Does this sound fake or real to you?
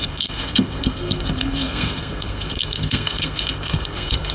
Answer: fake